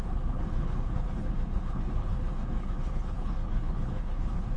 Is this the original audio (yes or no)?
no